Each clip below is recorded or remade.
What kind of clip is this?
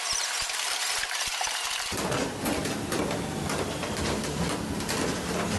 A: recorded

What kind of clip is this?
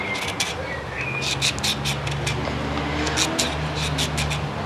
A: recorded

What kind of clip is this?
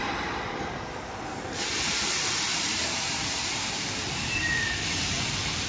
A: remade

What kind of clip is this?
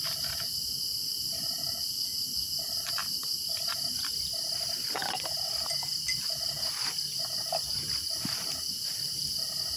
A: recorded